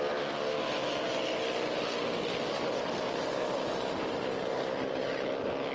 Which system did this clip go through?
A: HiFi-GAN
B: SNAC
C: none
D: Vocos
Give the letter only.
C